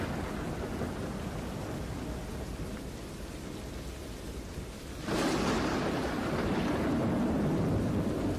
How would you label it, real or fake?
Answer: real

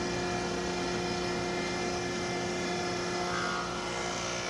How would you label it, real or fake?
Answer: real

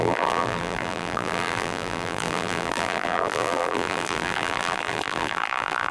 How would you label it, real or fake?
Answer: fake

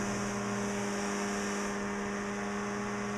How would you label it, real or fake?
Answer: real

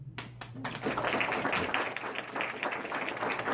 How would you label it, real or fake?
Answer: real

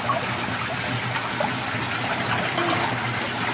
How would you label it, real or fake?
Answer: real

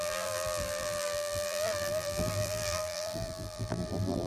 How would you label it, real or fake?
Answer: fake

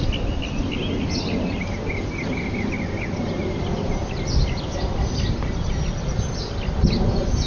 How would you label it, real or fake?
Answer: real